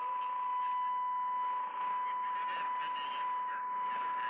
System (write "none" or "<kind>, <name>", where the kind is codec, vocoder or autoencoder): none